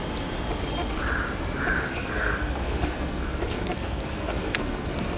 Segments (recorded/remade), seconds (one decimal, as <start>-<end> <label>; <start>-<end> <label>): 0.0-1.9 recorded; 1.9-5.2 remade